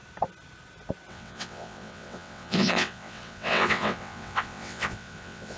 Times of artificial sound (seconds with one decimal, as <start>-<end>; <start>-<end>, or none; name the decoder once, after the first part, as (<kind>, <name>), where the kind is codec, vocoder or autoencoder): 1.1-5.6 (vocoder, WaveNeXt)

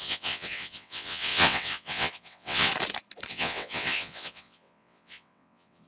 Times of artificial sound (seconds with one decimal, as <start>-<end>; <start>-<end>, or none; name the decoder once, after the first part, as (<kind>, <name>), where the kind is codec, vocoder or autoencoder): 0.0-2.7 (vocoder, WaveNeXt); 3.3-5.9